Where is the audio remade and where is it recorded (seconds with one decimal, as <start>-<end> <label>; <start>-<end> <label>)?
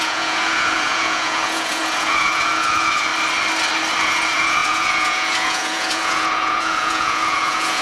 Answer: 0.0-3.1 remade; 3.1-4.0 recorded; 4.0-7.8 remade